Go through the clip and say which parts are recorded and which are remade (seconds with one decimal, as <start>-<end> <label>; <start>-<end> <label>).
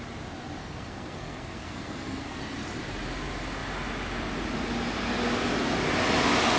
0.0-0.6 recorded; 0.6-2.4 remade; 2.4-6.6 recorded